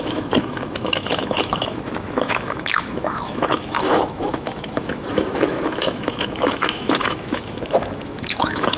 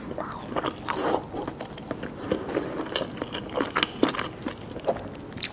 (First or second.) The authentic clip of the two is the second